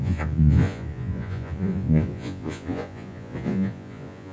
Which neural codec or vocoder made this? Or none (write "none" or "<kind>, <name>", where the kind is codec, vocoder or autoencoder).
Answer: vocoder, Vocos